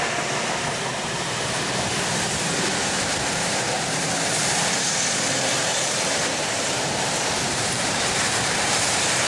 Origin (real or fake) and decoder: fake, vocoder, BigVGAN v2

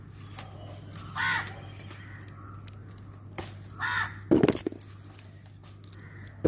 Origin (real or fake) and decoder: real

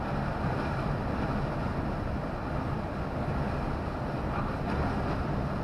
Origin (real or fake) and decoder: real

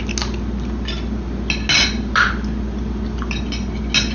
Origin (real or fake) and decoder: real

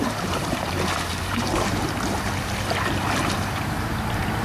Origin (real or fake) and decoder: fake, vocoder, BigVGAN v2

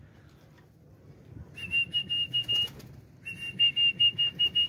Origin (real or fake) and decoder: real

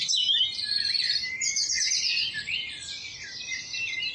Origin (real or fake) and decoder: fake, vocoder, BigVGAN v2